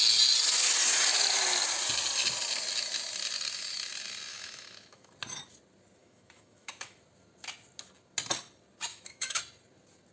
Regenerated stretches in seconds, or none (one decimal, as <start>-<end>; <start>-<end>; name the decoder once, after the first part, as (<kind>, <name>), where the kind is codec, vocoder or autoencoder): 4.3-5.1 (autoencoder, DAC-VAE); 6.0-7.0; 8.9-9.4